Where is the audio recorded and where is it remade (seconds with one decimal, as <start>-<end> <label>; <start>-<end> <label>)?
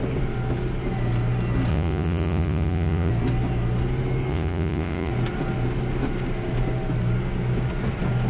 0.0-1.7 recorded; 1.7-3.1 remade; 3.1-4.3 recorded; 4.3-5.1 remade; 5.1-8.3 recorded